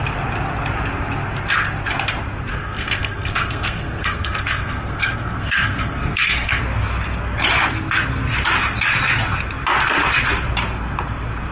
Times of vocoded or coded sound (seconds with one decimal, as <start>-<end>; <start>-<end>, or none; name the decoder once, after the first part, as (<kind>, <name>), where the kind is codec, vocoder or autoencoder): 2.5-6.6 (codec, SNAC)